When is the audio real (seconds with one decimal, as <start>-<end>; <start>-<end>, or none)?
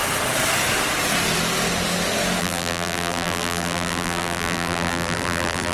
0.0-2.4